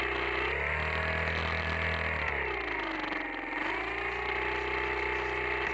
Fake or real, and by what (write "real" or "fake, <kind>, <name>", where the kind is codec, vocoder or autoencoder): real